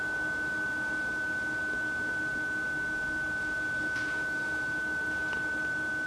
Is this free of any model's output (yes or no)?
yes